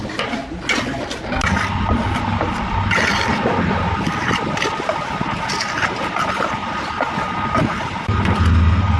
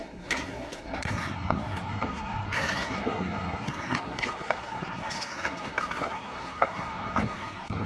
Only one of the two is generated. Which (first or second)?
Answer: second